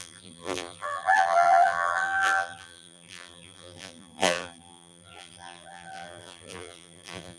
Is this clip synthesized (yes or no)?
yes